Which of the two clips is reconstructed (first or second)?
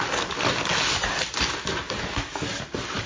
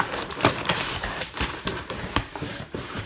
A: second